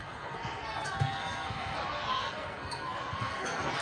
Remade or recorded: remade